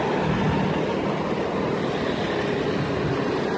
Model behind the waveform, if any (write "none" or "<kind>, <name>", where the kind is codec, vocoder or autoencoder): none